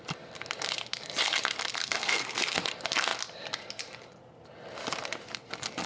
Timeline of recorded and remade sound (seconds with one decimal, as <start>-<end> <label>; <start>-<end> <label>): 0.0-1.8 recorded; 1.8-2.4 remade; 2.4-5.9 recorded